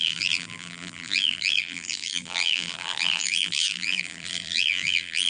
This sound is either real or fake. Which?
fake